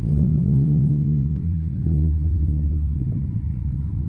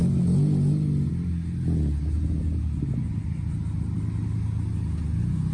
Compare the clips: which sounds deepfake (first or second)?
first